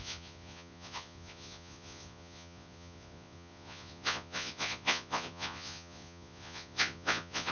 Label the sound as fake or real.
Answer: fake